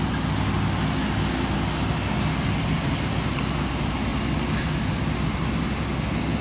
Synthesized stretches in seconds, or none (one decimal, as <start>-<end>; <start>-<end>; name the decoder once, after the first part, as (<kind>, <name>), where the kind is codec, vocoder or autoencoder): none